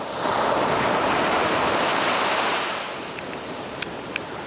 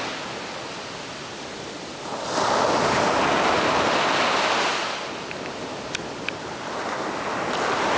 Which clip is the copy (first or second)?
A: first